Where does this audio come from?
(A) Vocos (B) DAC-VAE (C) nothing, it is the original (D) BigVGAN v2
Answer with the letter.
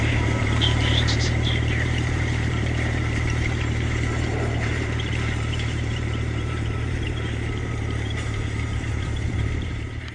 D